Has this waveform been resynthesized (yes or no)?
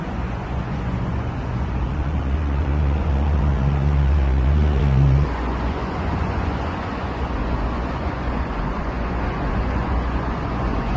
yes